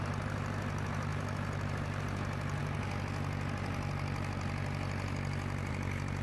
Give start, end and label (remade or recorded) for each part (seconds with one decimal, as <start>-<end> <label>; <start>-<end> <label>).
0.0-1.1 recorded; 1.1-2.0 remade; 2.0-6.2 recorded

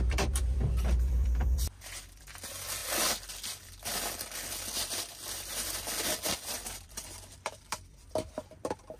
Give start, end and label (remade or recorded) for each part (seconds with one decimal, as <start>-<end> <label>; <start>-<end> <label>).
0.0-9.0 remade

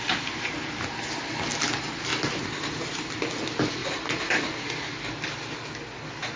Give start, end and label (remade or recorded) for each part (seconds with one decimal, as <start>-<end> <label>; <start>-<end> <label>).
0.0-2.1 recorded; 2.1-2.9 remade; 2.9-3.8 recorded; 3.8-4.9 remade; 4.9-6.4 recorded

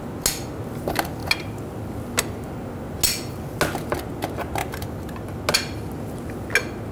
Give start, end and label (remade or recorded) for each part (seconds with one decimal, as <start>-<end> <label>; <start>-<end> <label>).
0.0-4.6 recorded; 4.6-5.4 remade; 5.4-6.9 recorded

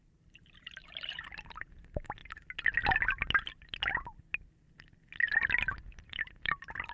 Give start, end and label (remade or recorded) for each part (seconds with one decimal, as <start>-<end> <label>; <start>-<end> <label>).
0.0-2.2 remade; 2.2-5.9 recorded; 5.9-6.9 remade

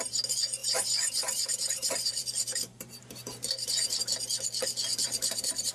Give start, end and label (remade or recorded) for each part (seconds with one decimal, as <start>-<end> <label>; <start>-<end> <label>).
0.0-0.6 recorded; 0.6-4.0 remade; 4.0-4.9 recorded; 4.9-5.7 remade

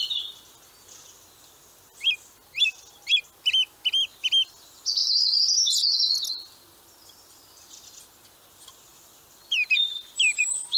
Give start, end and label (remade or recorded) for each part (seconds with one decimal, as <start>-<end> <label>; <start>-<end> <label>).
0.0-8.9 recorded; 8.9-10.4 remade; 10.4-10.8 recorded

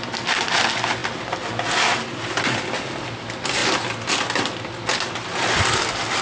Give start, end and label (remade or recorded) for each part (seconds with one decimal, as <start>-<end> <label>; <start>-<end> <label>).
0.0-1.0 recorded; 1.0-1.5 remade; 1.5-6.2 recorded